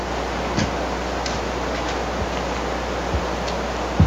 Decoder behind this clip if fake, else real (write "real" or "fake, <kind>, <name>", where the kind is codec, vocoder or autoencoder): real